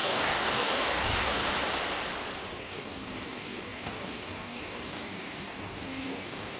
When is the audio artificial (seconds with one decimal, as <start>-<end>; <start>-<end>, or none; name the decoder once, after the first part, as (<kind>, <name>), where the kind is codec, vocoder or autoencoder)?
0.0-1.4 (codec, DAC); 2.6-6.6